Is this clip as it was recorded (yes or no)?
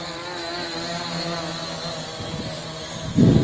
yes